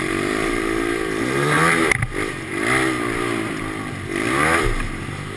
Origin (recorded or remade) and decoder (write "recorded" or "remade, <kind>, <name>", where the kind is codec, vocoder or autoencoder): recorded